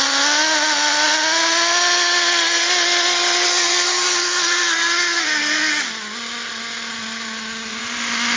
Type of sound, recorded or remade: recorded